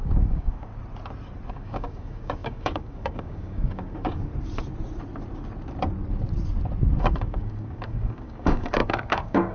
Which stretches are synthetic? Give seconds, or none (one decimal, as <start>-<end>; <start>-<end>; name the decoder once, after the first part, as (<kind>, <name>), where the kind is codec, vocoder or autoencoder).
0.0-0.7 (codec, DAC); 1.5-4.3; 7.0-9.5